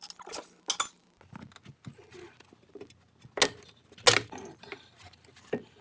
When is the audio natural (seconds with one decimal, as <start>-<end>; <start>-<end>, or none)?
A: 0.0-5.8